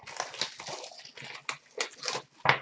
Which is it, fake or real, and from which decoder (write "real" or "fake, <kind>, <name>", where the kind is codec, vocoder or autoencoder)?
real